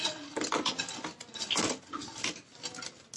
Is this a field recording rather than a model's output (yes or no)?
yes